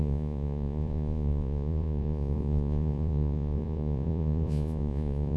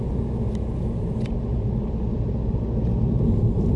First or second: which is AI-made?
first